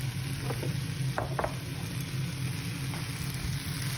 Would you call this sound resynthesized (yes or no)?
no